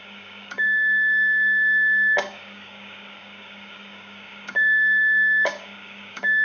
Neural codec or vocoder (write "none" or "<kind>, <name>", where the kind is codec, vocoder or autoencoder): codec, DAC